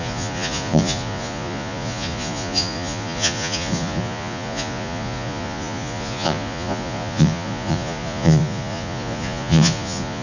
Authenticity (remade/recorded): remade